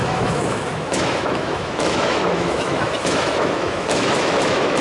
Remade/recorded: remade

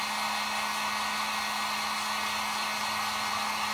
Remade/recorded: recorded